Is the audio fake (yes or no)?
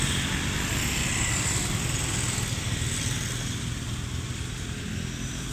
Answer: no